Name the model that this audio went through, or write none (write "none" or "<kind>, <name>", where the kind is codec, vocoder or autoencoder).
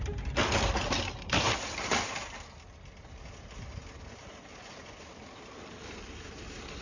none